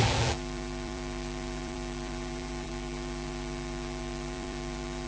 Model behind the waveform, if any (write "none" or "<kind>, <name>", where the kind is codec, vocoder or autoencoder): vocoder, BigVGAN v2